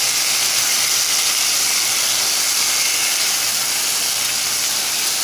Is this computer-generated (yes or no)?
no